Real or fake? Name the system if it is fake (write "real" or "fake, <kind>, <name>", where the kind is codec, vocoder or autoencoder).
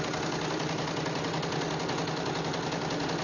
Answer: real